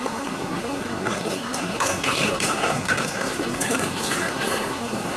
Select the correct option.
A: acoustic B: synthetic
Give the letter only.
B